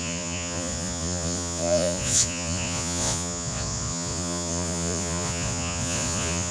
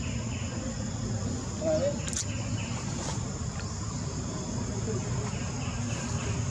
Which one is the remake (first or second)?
first